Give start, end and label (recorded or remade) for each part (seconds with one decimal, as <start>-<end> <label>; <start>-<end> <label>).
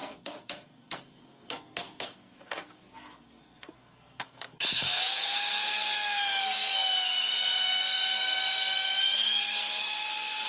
0.0-10.5 remade